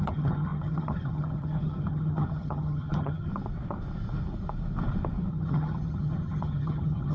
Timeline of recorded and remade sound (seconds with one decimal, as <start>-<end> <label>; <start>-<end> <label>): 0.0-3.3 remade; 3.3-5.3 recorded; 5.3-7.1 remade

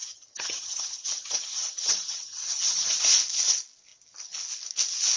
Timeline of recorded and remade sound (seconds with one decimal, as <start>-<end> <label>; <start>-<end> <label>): 0.0-3.0 remade; 3.0-5.2 recorded

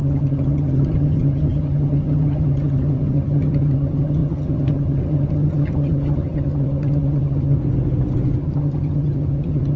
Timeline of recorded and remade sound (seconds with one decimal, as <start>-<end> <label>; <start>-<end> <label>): 0.0-7.6 remade; 7.6-8.4 recorded; 8.4-9.8 remade

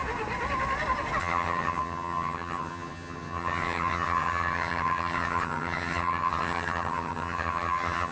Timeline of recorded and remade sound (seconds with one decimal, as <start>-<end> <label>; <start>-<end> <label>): 0.0-1.2 recorded; 1.2-8.1 remade

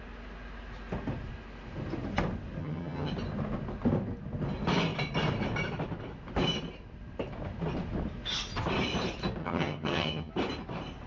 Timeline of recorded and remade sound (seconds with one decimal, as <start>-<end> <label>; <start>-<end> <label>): 0.0-2.6 recorded; 2.6-3.1 remade; 3.1-9.4 recorded; 9.4-10.3 remade; 10.3-11.1 recorded

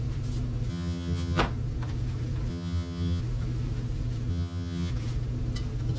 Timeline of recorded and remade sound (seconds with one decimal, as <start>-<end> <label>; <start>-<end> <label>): 0.0-0.7 recorded; 0.7-1.4 remade; 1.4-2.5 recorded; 2.5-3.2 remade; 3.2-4.3 recorded; 4.3-4.9 remade; 4.9-6.0 recorded

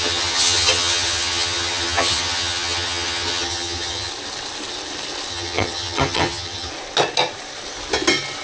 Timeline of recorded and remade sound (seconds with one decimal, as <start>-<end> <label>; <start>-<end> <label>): 0.0-4.1 remade; 4.1-5.3 recorded; 5.3-6.7 remade; 6.7-8.4 recorded

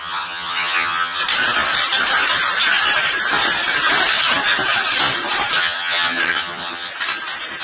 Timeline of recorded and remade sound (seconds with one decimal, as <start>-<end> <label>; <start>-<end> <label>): 0.0-1.2 remade; 1.2-5.6 recorded; 5.6-6.9 remade; 6.9-7.6 recorded